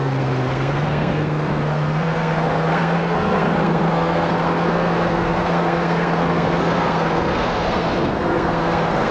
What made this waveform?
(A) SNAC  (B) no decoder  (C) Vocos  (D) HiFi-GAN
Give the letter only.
A